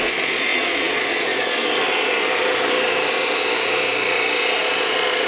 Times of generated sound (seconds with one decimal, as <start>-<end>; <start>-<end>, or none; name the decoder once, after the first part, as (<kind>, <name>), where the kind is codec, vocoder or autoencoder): 0.0-1.6 (vocoder, Vocos); 4.6-5.3